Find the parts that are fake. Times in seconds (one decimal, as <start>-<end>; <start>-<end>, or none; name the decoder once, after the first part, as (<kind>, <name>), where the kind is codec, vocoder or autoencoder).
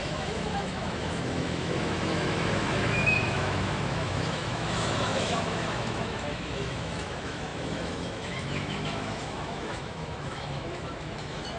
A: 0.0-11.6 (autoencoder, DAC-VAE)